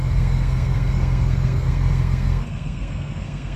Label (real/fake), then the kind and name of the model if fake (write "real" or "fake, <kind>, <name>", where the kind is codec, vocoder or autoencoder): fake, codec, SNAC